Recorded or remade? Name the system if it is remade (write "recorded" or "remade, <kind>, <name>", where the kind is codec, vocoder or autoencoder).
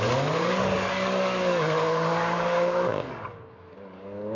remade, codec, DAC